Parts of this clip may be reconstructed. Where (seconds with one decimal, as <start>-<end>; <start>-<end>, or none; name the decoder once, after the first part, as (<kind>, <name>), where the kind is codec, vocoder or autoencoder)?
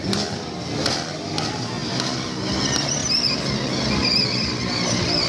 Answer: none